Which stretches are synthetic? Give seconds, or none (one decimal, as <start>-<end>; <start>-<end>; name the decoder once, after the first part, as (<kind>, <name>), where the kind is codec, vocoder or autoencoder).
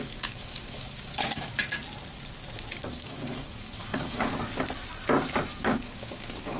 0.0-1.5 (codec, DAC); 2.9-4.3; 5.6-6.6